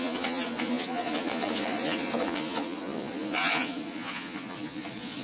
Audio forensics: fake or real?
fake